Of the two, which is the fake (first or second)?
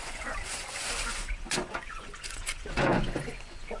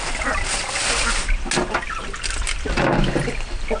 first